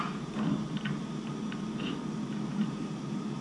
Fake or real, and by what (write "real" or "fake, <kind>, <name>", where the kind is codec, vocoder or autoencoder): real